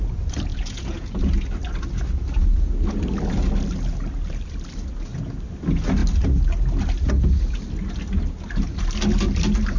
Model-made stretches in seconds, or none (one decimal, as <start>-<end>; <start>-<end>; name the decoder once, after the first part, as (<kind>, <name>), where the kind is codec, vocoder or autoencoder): 0.5-1.3 (vocoder, Vocos)